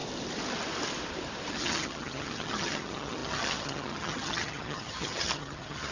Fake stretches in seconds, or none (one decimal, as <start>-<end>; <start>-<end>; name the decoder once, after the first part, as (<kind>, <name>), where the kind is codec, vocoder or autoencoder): 1.5-5.9 (vocoder, HiFi-GAN)